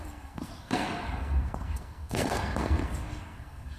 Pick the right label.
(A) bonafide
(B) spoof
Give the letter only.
B